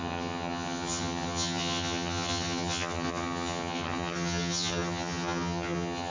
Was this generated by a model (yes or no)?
yes